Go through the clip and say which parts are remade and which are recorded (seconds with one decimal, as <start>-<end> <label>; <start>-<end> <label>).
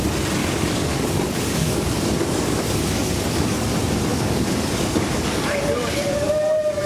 0.0-0.4 recorded; 0.4-3.6 remade; 3.6-4.1 recorded; 4.1-6.3 remade; 6.3-6.9 recorded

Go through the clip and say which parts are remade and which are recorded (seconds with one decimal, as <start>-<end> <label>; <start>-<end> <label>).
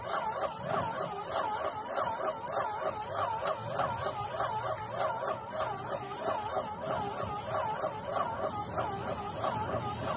0.0-10.2 recorded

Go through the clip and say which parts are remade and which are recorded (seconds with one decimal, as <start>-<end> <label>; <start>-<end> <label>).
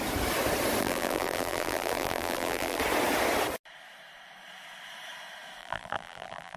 0.0-0.8 recorded; 0.8-2.8 remade; 2.8-5.6 recorded; 5.6-6.6 remade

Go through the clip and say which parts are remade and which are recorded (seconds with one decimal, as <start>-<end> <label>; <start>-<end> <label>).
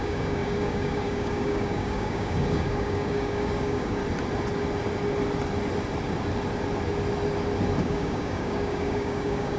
0.0-4.0 remade; 4.0-7.8 recorded; 7.8-9.6 remade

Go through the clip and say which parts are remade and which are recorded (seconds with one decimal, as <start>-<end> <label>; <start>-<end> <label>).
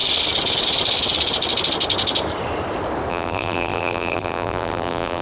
0.0-3.1 recorded; 3.1-5.2 remade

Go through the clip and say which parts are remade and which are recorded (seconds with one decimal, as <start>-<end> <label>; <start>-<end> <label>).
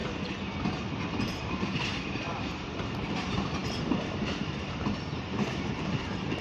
0.0-1.3 recorded; 1.3-6.4 remade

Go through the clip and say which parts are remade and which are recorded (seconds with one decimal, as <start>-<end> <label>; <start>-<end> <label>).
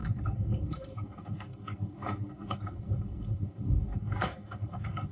0.0-5.1 remade